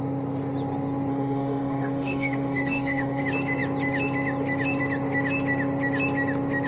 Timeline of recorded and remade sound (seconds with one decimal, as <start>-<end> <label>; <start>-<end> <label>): 0.0-1.1 recorded; 1.1-3.2 remade; 3.2-6.7 recorded